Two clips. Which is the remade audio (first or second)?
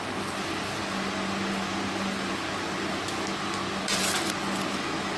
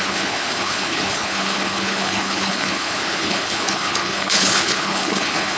second